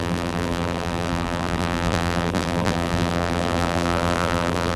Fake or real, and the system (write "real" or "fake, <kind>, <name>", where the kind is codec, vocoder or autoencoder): fake, vocoder, BigVGAN v2